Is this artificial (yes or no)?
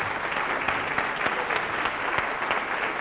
no